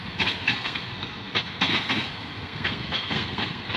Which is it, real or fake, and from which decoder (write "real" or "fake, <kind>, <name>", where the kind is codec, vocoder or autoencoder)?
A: fake, codec, SNAC